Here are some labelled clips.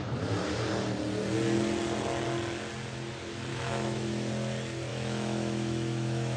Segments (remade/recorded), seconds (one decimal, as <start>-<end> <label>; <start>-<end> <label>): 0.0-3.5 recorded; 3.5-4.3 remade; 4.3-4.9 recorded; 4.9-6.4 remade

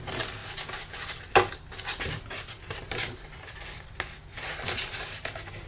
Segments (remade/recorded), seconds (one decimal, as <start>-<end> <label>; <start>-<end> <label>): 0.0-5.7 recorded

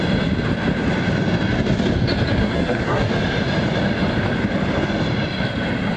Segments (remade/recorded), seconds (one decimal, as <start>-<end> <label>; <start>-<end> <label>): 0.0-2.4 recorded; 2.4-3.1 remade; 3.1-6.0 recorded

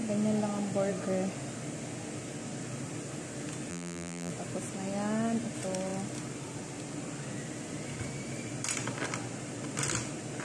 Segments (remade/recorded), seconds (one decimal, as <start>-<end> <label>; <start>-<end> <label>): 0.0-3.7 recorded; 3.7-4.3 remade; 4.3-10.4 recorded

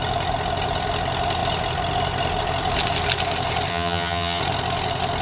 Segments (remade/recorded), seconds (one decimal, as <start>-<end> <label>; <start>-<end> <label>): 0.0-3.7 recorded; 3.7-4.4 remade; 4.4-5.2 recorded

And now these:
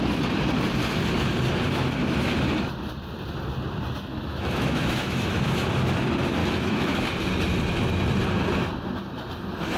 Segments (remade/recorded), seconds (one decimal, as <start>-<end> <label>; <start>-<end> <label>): 0.0-4.1 recorded; 4.1-5.7 remade; 5.7-6.4 recorded; 6.4-7.0 remade; 7.0-9.8 recorded